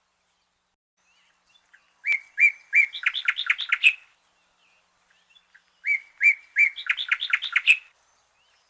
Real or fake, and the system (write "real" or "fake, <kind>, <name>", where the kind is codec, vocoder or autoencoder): real